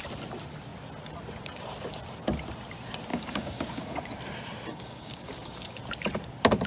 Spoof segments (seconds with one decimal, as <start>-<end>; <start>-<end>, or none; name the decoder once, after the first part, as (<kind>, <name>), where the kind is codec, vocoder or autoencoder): 3.1-4.0 (codec, DAC); 4.7-5.8